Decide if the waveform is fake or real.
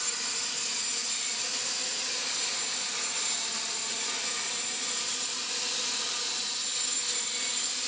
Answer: real